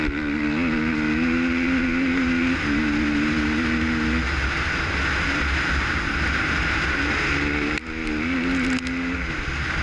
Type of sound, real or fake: real